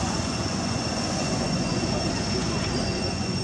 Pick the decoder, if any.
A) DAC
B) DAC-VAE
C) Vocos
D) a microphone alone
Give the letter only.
C